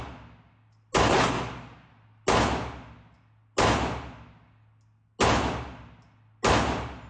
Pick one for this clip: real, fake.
real